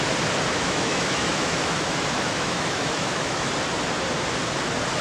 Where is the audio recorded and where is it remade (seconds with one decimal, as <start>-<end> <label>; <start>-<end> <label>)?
0.0-0.5 recorded; 0.5-3.5 remade; 3.5-5.0 recorded

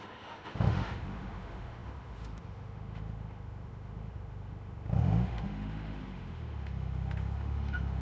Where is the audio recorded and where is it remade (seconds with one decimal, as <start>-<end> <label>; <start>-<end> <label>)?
0.0-8.0 remade

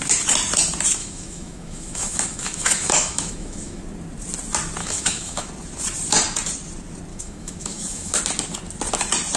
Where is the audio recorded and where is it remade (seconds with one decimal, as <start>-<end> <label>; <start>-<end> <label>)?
0.0-1.0 recorded; 1.0-3.8 remade; 3.8-4.8 recorded; 4.8-5.5 remade; 5.5-7.1 recorded; 7.1-8.2 remade; 8.2-9.4 recorded

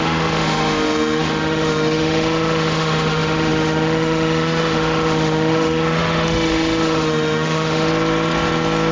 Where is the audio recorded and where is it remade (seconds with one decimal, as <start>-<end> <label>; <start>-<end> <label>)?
0.0-7.9 remade; 7.9-8.9 recorded

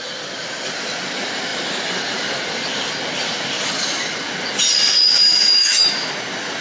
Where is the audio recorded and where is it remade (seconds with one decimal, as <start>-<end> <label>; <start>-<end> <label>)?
0.0-5.5 recorded; 5.5-6.1 remade; 6.1-6.6 recorded